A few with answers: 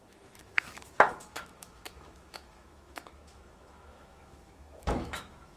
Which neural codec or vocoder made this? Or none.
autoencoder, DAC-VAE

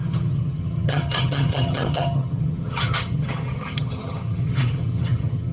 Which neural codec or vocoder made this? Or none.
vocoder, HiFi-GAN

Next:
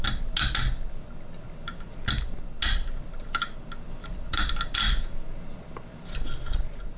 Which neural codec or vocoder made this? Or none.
none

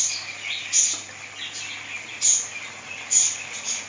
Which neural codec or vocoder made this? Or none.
none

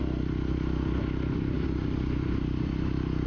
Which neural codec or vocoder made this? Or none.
none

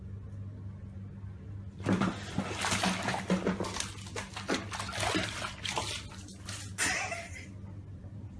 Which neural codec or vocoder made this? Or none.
none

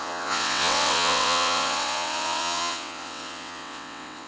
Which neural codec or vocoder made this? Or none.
vocoder, WaveNeXt